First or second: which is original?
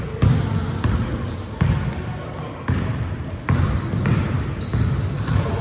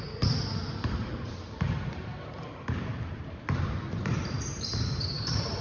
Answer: first